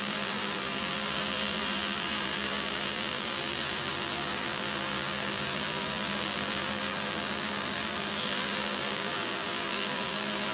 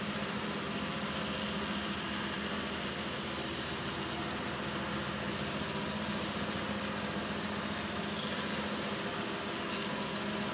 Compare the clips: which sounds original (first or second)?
second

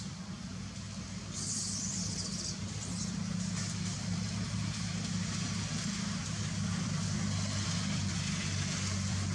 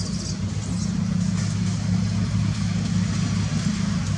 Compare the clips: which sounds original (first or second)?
second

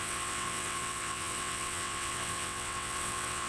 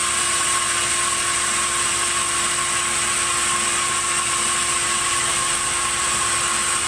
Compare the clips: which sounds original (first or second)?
second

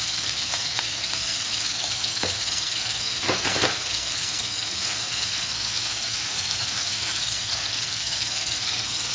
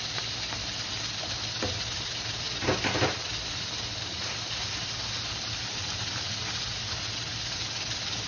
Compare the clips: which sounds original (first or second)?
second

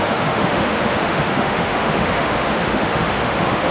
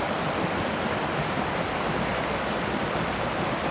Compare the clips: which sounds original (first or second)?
second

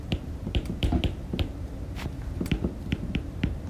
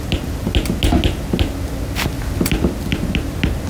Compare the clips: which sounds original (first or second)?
second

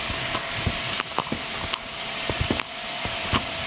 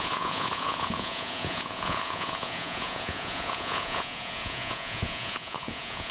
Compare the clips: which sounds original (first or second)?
first